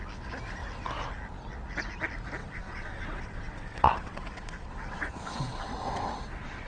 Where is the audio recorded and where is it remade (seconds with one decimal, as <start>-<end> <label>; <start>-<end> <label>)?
0.0-2.4 recorded; 2.4-6.7 remade

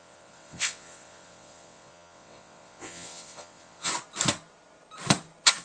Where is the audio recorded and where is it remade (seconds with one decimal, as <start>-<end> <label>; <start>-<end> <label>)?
0.0-3.9 remade; 3.9-5.6 recorded

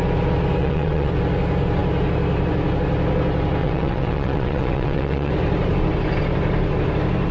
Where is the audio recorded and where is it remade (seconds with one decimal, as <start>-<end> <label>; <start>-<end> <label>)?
0.0-0.6 recorded; 0.6-1.1 remade; 1.1-3.6 recorded; 3.6-5.3 remade; 5.3-7.3 recorded

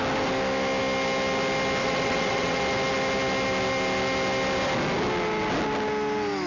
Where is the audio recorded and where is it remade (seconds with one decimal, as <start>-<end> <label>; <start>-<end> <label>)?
0.0-1.8 recorded; 1.8-2.6 remade; 2.6-6.5 recorded

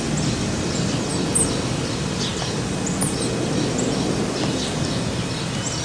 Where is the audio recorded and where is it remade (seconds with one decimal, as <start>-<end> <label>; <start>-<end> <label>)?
0.0-5.8 recorded